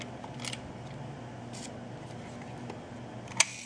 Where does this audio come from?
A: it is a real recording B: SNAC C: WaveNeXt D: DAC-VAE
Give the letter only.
A